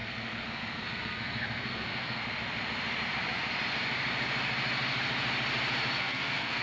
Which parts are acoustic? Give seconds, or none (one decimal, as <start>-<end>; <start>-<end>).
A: 2.2-6.0